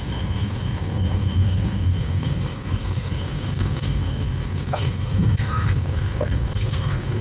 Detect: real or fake fake